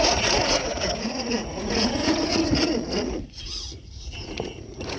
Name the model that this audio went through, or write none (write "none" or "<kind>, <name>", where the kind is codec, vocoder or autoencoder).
vocoder, Vocos